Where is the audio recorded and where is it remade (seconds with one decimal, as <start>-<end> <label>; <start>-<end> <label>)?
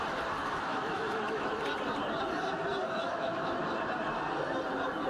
0.0-0.4 recorded; 0.4-1.5 remade; 1.5-2.8 recorded; 2.8-3.6 remade; 3.6-5.1 recorded